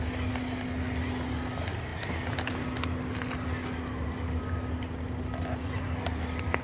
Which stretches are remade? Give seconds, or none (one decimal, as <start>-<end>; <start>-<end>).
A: none